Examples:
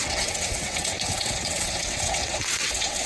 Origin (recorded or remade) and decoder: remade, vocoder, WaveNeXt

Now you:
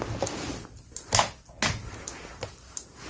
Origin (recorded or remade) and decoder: recorded